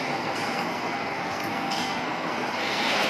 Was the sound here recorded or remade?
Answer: remade